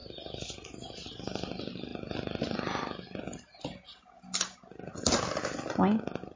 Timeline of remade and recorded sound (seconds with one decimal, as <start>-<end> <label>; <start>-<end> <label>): 0.0-6.4 recorded